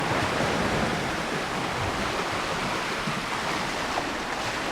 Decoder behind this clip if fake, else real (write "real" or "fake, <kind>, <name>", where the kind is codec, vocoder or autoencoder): real